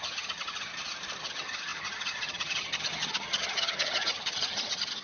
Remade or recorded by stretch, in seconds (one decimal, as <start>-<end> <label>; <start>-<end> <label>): 0.0-0.7 remade; 0.7-1.2 recorded; 1.2-5.0 remade